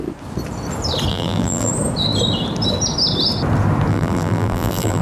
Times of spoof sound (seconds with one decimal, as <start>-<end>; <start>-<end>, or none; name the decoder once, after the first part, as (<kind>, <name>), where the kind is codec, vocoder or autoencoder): 1.1-1.7 (vocoder, BigVGAN v2); 3.9-5.0